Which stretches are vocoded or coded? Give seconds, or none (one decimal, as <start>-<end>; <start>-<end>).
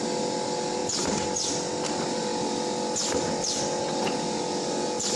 none